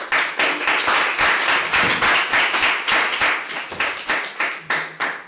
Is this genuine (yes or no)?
yes